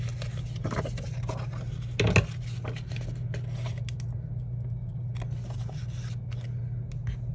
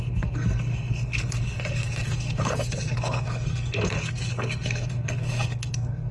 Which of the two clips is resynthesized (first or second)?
second